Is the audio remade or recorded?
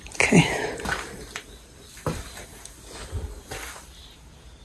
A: recorded